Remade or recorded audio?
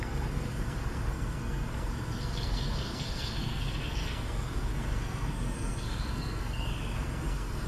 remade